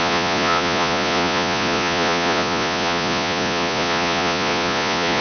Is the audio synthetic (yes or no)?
yes